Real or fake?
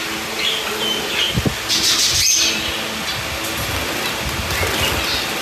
real